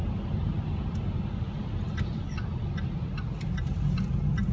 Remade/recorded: recorded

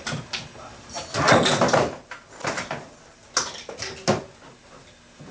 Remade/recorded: recorded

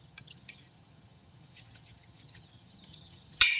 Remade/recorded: remade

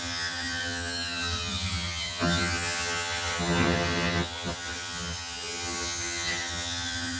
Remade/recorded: remade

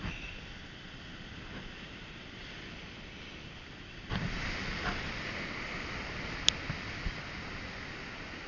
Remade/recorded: recorded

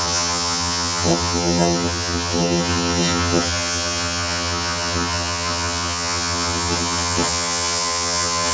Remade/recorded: remade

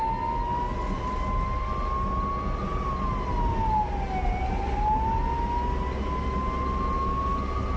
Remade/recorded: recorded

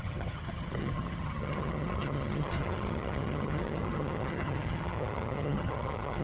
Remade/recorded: remade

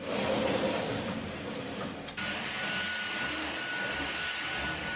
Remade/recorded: recorded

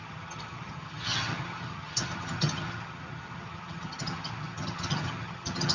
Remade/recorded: remade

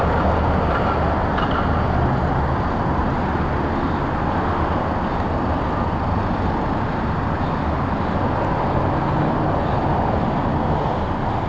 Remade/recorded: recorded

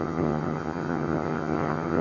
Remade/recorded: remade